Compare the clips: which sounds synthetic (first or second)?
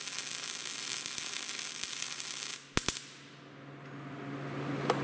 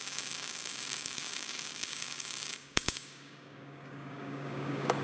second